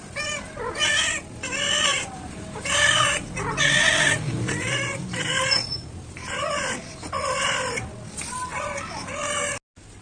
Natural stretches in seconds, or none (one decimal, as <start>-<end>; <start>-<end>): 0.0-1.9; 6.7-10.0

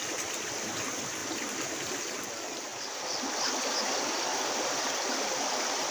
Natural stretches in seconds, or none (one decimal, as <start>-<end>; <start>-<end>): 1.2-1.9; 2.7-3.8

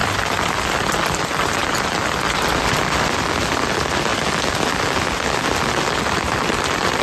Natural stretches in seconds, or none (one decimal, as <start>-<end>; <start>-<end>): 0.0-0.5; 4.1-5.8